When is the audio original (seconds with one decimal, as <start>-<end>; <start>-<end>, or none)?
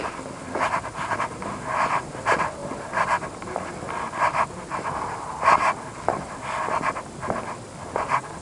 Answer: 0.0-8.4